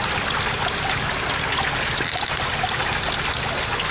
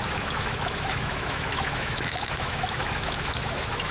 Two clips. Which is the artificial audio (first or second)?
second